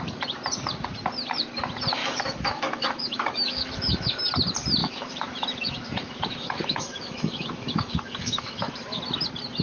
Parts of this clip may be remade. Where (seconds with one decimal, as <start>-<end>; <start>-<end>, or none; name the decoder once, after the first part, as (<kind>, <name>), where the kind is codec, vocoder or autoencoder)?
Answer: 2.0-4.2 (autoencoder, DAC-VAE); 4.8-9.0